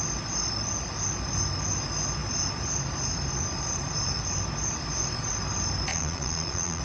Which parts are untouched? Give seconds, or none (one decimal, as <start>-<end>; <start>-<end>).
0.0-5.9